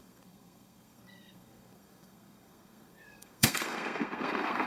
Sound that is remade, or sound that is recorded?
remade